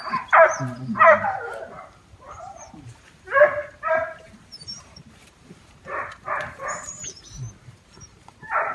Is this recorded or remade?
remade